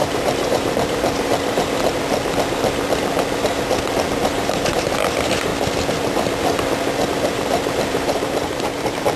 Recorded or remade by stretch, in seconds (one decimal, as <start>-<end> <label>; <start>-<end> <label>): 0.0-1.3 remade; 1.3-4.1 recorded; 4.1-5.5 remade; 5.5-7.1 recorded; 7.1-9.2 remade